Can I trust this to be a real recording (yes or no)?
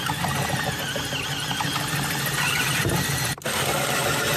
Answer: yes